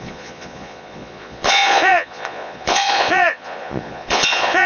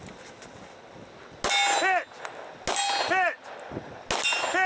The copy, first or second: first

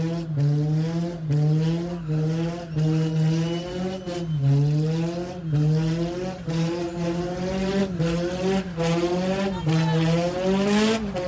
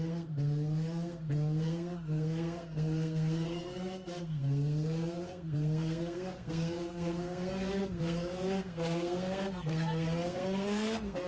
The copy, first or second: second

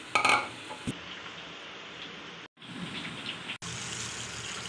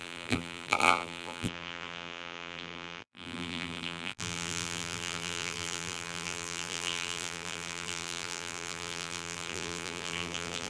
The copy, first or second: second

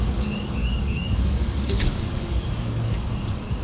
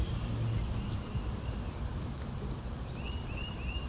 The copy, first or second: first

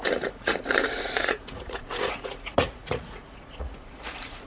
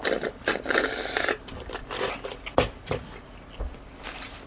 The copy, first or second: first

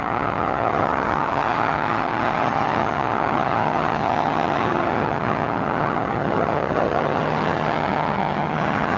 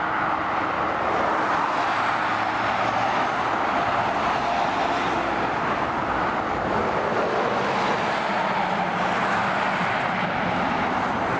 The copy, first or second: first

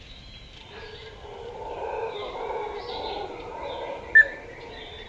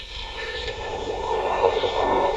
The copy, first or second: second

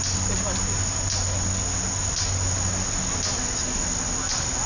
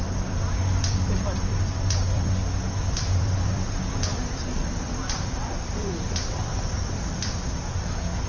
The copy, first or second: second